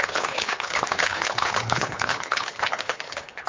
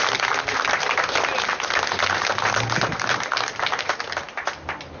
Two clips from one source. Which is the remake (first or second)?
first